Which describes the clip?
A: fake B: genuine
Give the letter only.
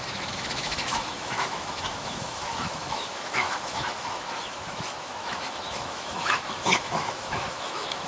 A